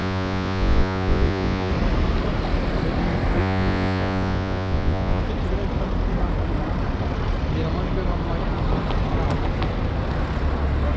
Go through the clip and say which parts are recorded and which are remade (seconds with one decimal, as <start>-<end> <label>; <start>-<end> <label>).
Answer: 0.0-1.7 remade; 1.7-3.4 recorded; 3.4-5.2 remade; 5.2-11.0 recorded